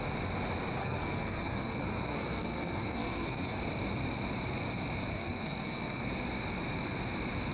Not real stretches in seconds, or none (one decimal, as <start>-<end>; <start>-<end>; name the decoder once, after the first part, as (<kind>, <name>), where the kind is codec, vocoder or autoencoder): 0.8-3.6 (codec, SNAC); 5.1-6.1